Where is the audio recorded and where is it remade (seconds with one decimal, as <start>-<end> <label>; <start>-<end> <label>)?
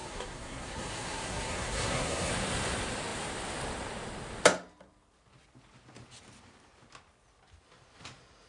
0.0-2.3 remade; 2.3-8.5 recorded